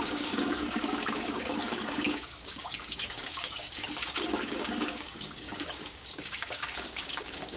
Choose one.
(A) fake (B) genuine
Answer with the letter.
A